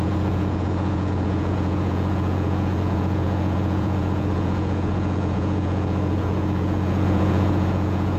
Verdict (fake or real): fake